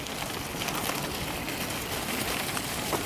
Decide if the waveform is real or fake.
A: real